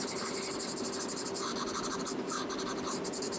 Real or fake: real